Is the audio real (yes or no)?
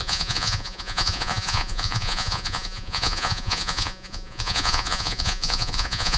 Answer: no